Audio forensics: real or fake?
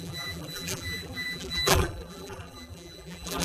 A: fake